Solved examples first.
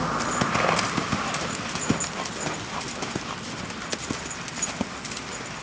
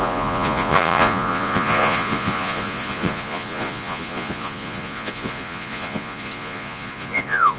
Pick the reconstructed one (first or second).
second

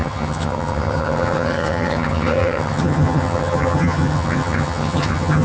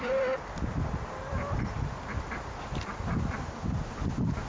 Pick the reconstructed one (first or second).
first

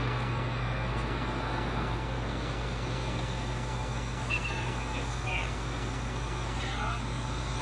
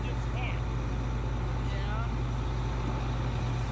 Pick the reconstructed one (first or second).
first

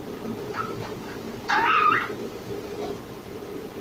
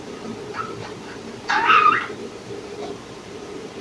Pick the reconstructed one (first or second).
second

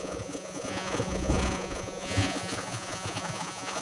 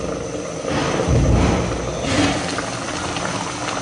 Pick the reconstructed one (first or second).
first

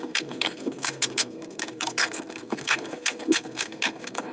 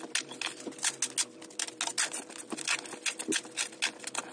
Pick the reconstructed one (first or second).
first